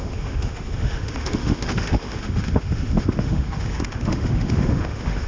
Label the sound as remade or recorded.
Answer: remade